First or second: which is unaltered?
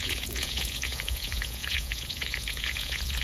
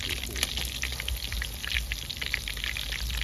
second